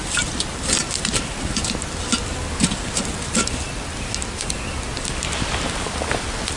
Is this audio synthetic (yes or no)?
no